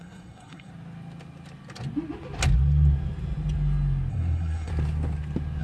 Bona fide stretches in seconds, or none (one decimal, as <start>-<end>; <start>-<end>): 0.7-4.1; 4.7-5.6